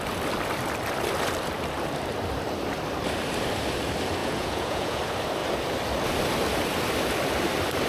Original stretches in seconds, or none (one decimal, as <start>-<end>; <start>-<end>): 0.0-4.2; 5.0-7.9